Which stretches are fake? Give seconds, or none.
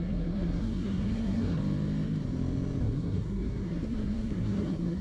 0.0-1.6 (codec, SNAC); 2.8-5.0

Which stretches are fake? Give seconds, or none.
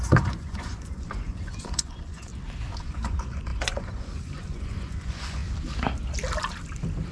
0.0-2.3 (vocoder, Vocos); 2.8-5.4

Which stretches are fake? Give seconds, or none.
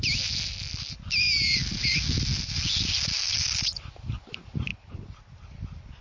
none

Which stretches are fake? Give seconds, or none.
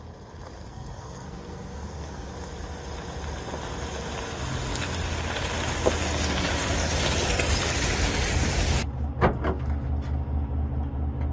0.6-2.3 (codec, SNAC)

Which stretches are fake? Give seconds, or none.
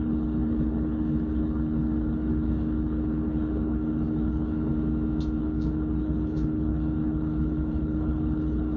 0.0-4.7 (codec, HILCodec); 5.4-8.8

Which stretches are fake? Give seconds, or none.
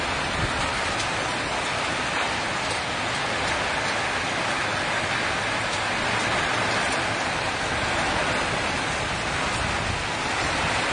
none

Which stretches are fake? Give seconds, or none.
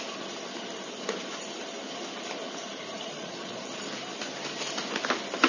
2.9-3.6 (vocoder, Vocos)